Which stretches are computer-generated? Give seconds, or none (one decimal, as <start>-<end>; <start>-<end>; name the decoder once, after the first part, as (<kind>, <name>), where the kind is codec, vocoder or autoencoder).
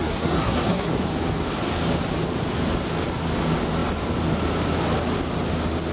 0.0-0.9 (codec, SNAC)